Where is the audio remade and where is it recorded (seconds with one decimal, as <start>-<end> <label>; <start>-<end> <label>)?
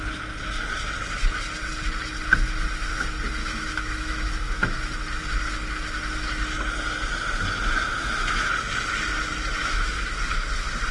0.0-3.4 recorded; 3.4-4.8 remade; 4.8-7.9 recorded; 7.9-8.5 remade; 8.5-9.6 recorded; 9.6-10.2 remade; 10.2-10.9 recorded